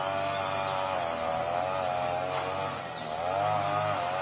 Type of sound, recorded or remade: recorded